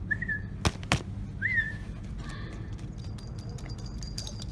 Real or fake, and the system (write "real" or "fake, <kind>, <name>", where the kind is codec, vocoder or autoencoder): real